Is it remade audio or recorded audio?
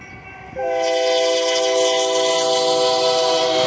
recorded